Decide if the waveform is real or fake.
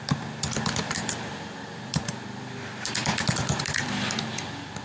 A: fake